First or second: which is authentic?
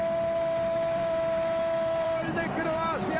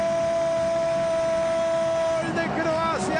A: second